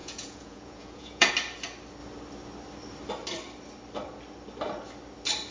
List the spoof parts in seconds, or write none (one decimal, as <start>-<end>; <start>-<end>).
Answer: 0.0-1.3